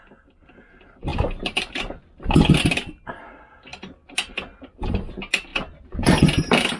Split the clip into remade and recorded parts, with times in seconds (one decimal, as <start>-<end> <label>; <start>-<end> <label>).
0.0-1.1 recorded; 1.1-3.2 remade; 3.2-5.5 recorded; 5.5-6.8 remade